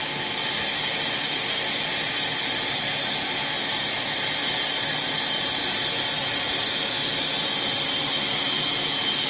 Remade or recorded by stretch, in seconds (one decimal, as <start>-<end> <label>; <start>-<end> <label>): 0.0-9.3 recorded